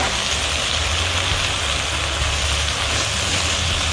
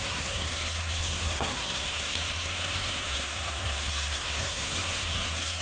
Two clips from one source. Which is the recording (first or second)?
first